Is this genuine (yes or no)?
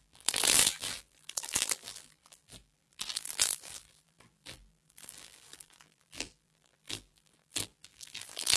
no